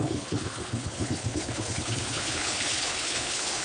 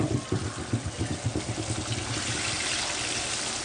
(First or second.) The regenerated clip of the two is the first